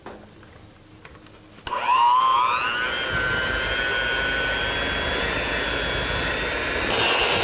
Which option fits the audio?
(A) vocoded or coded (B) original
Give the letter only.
B